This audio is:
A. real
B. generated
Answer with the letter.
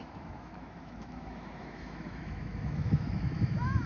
B